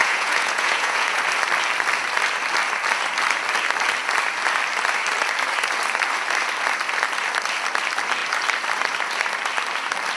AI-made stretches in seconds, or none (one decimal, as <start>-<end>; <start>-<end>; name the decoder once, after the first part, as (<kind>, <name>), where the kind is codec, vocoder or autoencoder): 0.0-1.2 (vocoder, Vocos)